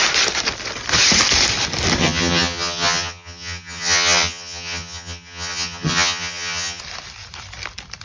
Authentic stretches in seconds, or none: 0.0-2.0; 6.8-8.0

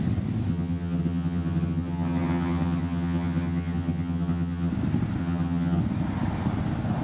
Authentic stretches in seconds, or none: 0.0-0.5; 4.7-5.2; 5.8-7.0

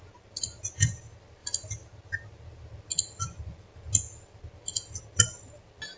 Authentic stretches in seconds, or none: 0.0-6.0

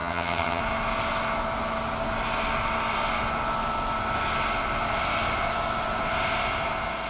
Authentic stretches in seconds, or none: 0.6-7.1

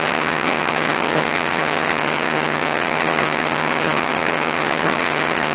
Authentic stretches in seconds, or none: none

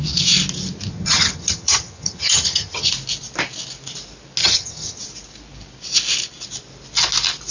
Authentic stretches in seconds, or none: 0.0-0.9; 2.9-4.4; 5.0-7.5

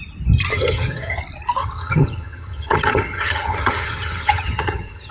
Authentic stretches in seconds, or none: 0.0-0.5; 1.2-1.6